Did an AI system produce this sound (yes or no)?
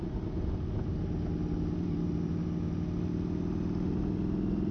no